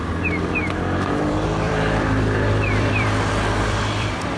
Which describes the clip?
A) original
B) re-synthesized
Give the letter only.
B